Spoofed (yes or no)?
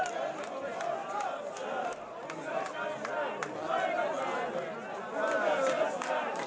no